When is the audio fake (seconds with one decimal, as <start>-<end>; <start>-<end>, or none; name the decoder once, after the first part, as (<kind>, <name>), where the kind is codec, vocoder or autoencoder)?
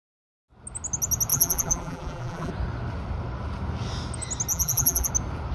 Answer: 1.3-2.5 (vocoder, BigVGAN v2); 4.5-5.1